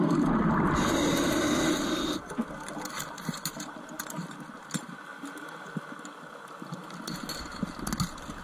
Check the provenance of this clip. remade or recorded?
recorded